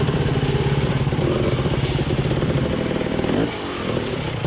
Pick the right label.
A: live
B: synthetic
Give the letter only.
B